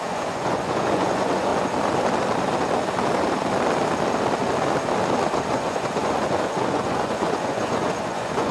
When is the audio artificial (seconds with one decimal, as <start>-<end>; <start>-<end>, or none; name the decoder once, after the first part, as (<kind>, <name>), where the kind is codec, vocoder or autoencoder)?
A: 0.0-1.5 (vocoder, Vocos); 5.5-8.5